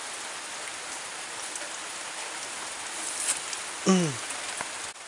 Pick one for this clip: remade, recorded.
recorded